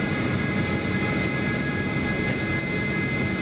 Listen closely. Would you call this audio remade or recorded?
recorded